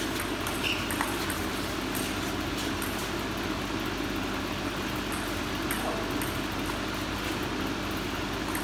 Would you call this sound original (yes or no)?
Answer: yes